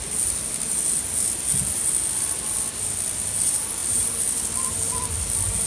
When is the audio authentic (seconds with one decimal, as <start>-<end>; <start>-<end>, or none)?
0.0-5.7